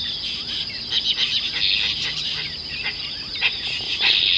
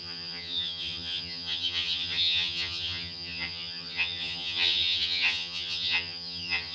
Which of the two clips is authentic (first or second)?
first